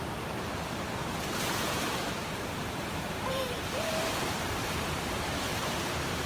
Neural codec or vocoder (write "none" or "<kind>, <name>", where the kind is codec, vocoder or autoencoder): vocoder, BigVGAN v2